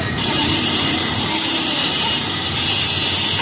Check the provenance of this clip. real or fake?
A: fake